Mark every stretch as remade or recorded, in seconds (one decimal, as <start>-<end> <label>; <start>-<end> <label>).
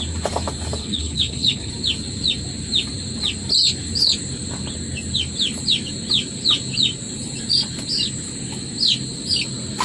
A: 0.0-0.8 recorded; 0.8-1.7 remade; 1.7-9.8 recorded